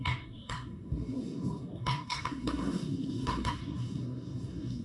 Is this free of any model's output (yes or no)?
no